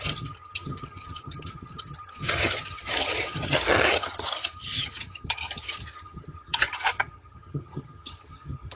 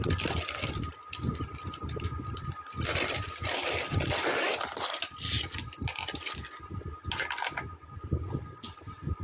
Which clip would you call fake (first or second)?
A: first